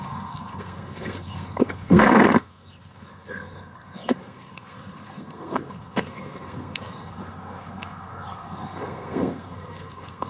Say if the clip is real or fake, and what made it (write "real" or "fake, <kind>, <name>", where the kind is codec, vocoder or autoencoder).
fake, codec, SNAC